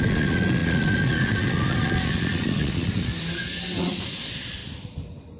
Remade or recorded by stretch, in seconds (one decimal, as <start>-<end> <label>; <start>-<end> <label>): 0.0-3.1 remade; 3.1-3.8 recorded; 3.8-4.6 remade; 4.6-5.4 recorded